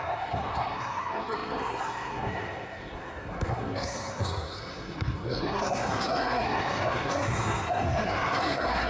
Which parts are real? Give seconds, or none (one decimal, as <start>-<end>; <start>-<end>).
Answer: none